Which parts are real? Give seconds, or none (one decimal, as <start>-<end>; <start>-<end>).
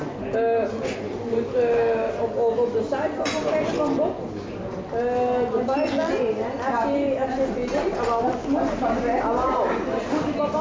0.0-10.6